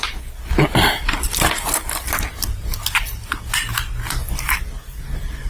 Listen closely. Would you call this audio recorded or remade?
recorded